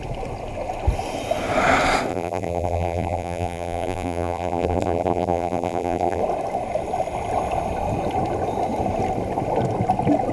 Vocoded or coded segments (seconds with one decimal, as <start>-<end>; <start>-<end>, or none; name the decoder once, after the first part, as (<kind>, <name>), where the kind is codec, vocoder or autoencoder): 2.1-6.2 (vocoder, BigVGAN v2)